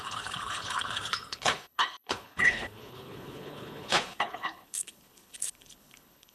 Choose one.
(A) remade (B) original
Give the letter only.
A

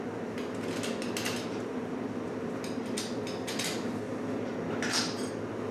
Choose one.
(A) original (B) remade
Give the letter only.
A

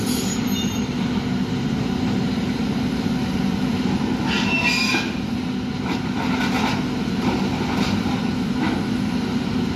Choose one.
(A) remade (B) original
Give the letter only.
B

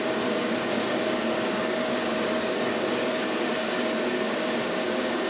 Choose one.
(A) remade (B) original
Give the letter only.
A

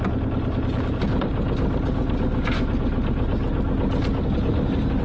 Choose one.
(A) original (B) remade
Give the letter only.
A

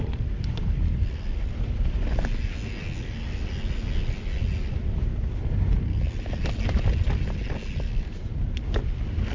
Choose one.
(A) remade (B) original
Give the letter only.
B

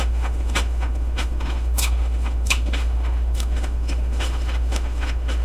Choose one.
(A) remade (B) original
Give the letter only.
A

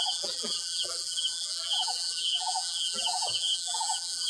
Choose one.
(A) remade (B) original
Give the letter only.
A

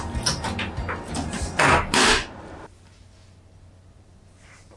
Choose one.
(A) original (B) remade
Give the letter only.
A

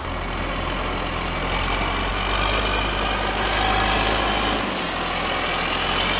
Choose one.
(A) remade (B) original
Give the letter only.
B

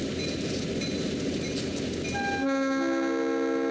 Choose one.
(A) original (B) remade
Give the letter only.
A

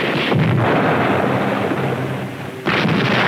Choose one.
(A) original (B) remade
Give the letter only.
A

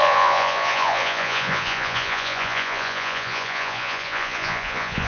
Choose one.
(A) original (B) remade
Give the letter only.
B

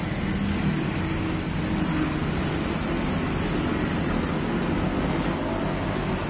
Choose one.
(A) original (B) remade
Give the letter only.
A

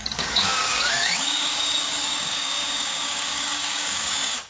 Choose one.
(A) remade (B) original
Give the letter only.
A